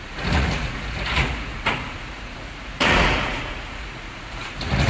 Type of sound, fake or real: fake